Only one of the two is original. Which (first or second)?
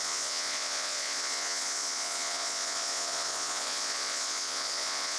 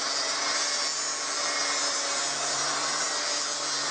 second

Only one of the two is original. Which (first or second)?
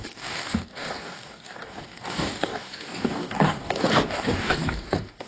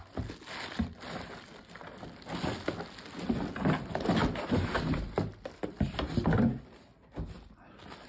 second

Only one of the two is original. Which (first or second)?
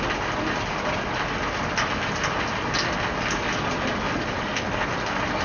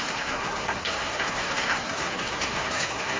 first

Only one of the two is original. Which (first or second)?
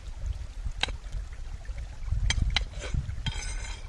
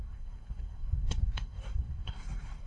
first